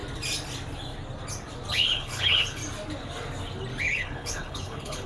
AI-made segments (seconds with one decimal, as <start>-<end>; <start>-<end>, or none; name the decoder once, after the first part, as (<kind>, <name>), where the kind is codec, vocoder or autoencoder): 1.7-2.6 (codec, HILCodec); 3.8-5.1